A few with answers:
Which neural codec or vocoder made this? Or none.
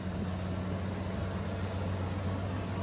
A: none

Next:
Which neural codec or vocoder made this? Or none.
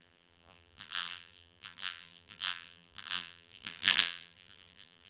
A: vocoder, BigVGAN v2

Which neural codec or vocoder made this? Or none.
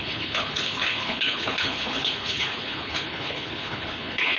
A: codec, HILCodec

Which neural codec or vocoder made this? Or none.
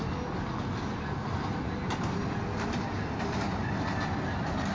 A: none